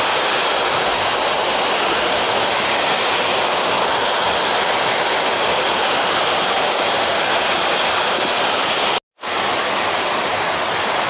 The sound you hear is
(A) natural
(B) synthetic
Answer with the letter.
A